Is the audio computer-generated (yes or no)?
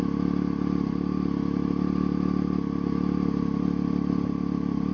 no